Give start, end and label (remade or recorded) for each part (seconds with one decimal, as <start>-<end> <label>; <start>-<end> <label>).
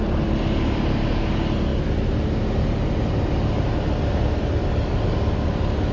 0.0-4.6 recorded; 4.6-5.9 remade